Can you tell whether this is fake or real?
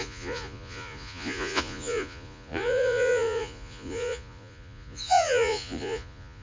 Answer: fake